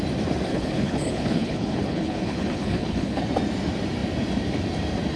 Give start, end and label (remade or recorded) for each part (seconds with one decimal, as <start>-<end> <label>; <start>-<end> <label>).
0.0-0.5 recorded; 0.5-3.2 remade; 3.2-5.2 recorded